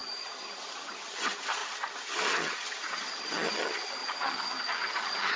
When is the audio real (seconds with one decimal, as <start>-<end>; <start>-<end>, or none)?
none